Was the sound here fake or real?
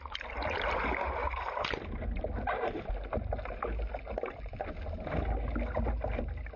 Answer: real